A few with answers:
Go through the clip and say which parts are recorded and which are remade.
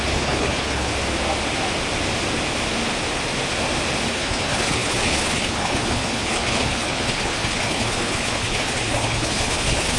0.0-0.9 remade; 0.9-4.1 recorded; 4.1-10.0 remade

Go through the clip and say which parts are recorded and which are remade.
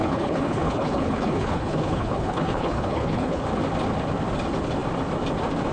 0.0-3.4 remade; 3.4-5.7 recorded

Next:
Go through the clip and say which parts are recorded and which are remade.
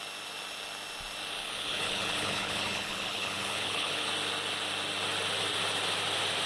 0.0-1.4 recorded; 1.4-4.1 remade; 4.1-6.5 recorded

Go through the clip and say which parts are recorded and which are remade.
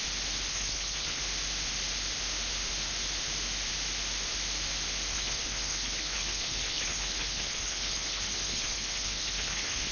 0.0-0.5 recorded; 0.5-1.2 remade; 1.2-5.1 recorded; 5.1-9.9 remade